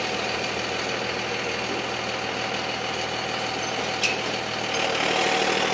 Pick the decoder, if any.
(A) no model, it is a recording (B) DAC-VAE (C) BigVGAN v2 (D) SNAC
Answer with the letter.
A